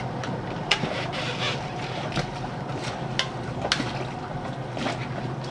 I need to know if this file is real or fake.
real